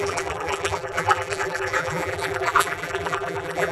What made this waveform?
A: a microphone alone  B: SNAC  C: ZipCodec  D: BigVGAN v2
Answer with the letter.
D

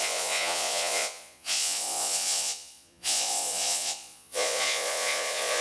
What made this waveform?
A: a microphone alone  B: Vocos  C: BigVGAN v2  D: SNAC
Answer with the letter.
B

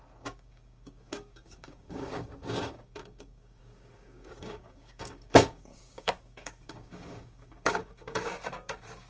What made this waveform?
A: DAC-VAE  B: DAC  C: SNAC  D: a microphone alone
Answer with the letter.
B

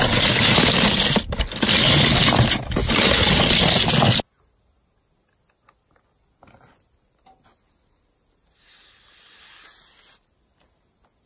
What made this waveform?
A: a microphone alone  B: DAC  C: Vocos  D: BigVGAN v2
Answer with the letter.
A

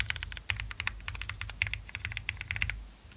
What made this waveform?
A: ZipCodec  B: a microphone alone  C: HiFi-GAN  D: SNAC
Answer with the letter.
B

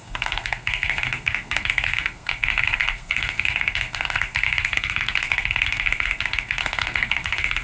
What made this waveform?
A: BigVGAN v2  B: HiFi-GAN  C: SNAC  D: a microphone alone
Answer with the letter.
C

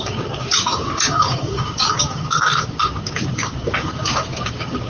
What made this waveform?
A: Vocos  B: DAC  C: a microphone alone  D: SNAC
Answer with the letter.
B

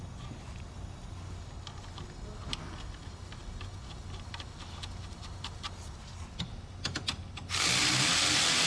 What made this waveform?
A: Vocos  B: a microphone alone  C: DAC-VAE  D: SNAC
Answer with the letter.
B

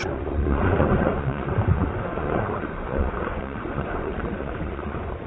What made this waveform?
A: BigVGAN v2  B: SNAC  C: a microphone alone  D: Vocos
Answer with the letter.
D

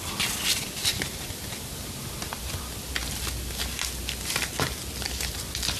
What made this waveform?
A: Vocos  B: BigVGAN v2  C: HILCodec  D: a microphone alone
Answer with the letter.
D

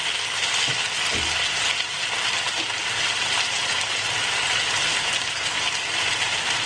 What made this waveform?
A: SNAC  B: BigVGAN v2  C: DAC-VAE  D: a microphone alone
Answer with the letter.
D